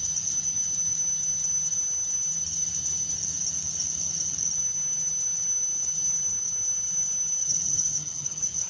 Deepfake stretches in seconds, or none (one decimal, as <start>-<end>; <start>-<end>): 7.4-8.7